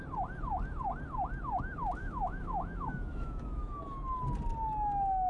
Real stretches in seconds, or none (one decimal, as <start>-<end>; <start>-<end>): 0.0-2.0; 3.8-5.3